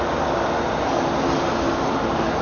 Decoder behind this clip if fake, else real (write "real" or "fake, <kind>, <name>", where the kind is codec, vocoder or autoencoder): real